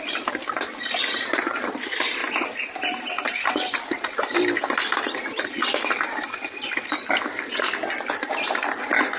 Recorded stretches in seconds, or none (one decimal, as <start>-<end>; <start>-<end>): 0.0-9.2